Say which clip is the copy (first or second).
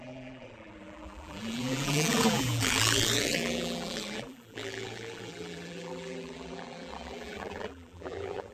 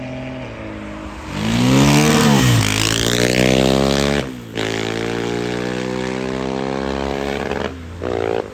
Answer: first